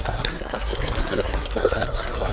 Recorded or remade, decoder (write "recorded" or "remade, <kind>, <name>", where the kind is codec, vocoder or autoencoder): remade, codec, SNAC